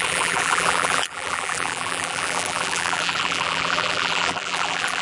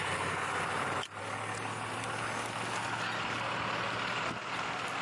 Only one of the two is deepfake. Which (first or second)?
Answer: first